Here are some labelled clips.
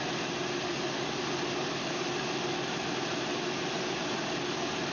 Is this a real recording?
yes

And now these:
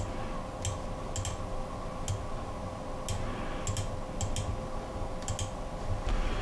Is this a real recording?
yes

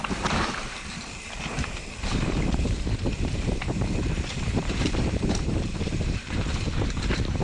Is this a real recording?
no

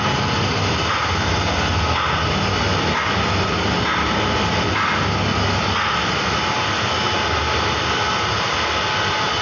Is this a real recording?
yes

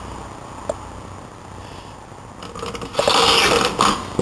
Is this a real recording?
yes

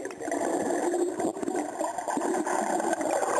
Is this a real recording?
yes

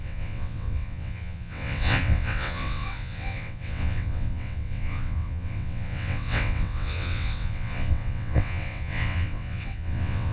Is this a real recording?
no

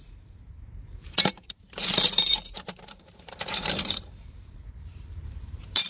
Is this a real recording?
no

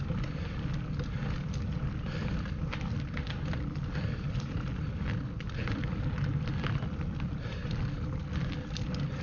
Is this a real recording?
yes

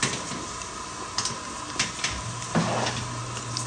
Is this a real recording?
yes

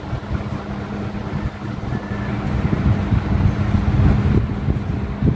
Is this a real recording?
yes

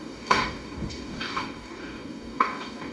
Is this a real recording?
no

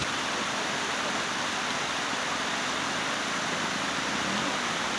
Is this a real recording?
yes